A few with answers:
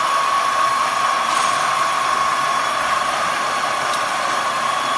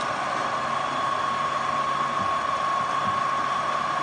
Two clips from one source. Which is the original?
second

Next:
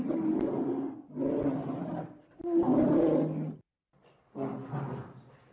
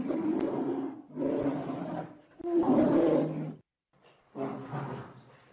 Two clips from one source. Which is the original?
first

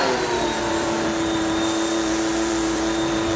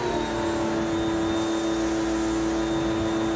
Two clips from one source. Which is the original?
second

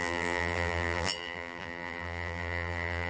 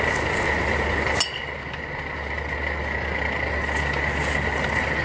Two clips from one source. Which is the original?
second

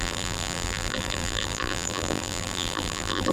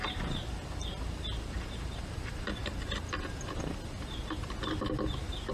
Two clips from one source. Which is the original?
second